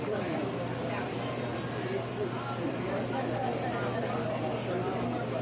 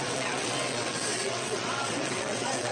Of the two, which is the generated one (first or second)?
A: second